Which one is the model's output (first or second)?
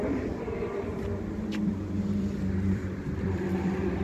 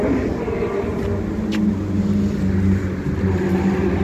first